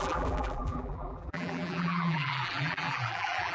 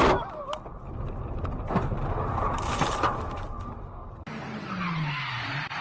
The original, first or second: second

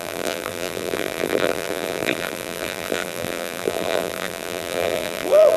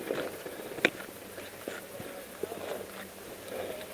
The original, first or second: second